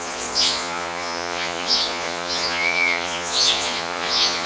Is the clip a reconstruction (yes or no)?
yes